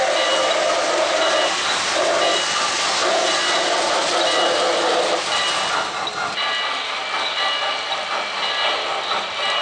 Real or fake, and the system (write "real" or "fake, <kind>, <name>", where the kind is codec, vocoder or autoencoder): real